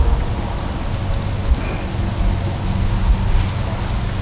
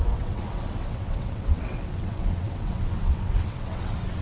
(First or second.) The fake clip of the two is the second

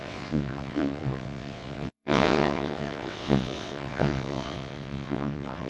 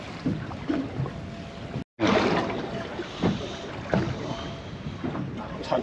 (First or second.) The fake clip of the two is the first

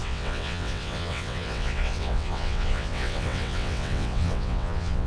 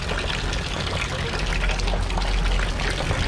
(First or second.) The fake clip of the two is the first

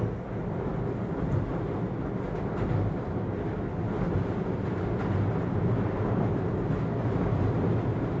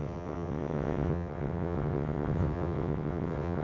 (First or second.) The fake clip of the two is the second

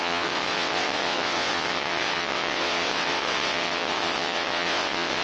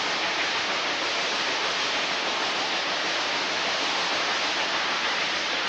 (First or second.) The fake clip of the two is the first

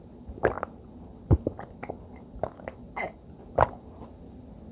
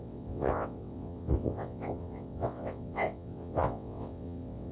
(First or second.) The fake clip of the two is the second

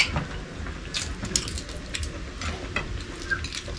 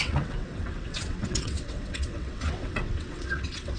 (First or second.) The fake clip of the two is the second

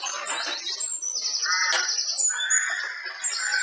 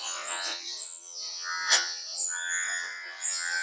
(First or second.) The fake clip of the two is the second